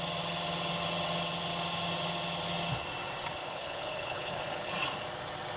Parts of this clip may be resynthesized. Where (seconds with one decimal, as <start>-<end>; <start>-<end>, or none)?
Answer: 3.4-4.7